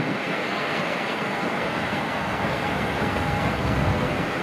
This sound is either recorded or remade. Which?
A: remade